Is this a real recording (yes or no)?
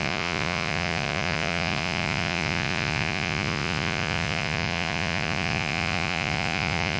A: no